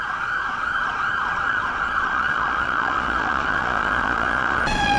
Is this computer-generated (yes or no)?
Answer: yes